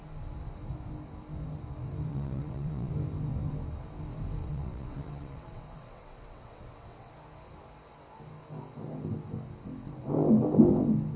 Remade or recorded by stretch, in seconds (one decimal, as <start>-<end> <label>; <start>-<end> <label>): 0.0-2.1 recorded; 2.1-2.9 remade; 2.9-4.4 recorded; 4.4-7.1 remade; 7.1-11.2 recorded